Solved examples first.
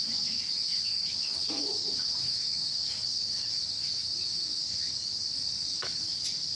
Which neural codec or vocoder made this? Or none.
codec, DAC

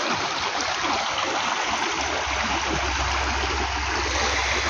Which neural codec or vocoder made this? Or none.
none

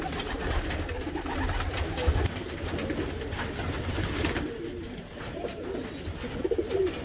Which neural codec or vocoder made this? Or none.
none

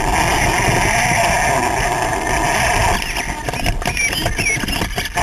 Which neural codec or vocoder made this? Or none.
none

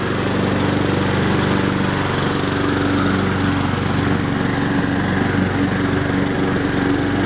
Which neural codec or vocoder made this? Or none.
none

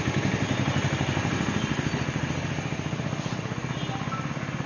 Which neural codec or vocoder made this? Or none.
none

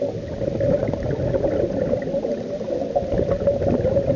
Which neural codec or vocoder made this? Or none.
none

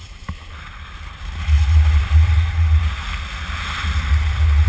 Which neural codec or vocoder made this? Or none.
none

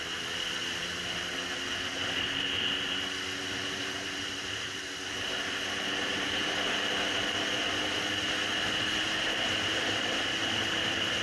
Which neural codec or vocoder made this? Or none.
none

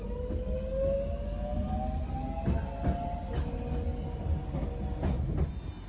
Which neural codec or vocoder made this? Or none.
none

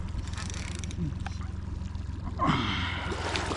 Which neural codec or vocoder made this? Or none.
none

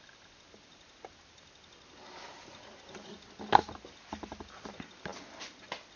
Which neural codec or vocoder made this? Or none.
none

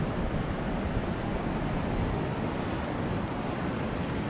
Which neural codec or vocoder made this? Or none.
vocoder, BigVGAN v2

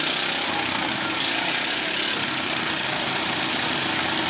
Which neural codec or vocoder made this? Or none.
none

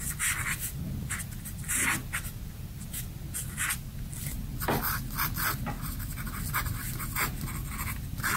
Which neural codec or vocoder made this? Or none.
none